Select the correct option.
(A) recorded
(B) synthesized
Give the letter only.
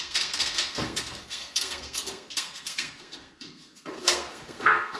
B